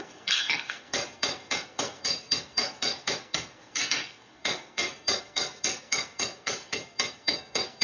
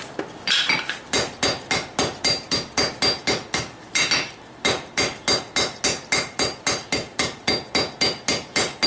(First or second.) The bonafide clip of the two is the second